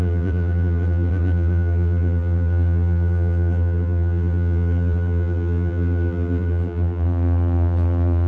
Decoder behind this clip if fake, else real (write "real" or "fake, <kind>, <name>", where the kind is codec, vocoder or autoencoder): fake, vocoder, BigVGAN v2